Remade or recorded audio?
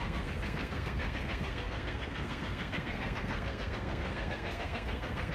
remade